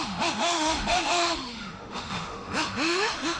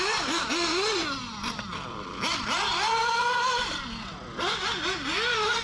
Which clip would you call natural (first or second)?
second